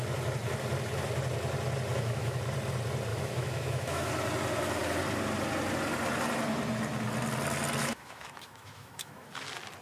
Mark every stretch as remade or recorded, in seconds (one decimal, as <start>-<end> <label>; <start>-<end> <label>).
0.0-1.9 recorded; 1.9-2.4 remade; 2.4-3.1 recorded; 3.1-4.1 remade; 4.1-7.8 recorded; 7.8-9.3 remade; 9.3-9.8 recorded